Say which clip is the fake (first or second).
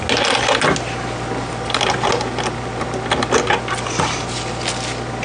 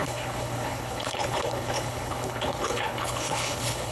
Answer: second